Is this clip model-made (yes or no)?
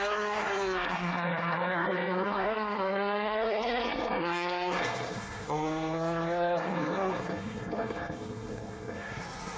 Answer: yes